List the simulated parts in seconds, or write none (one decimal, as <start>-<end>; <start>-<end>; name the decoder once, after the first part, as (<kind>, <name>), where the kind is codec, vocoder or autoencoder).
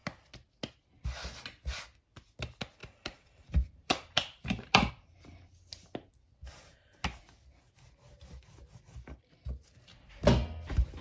2.8-4.9 (vocoder, BigVGAN v2)